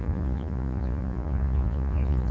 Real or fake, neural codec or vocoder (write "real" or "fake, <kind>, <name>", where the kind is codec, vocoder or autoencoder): fake, vocoder, Vocos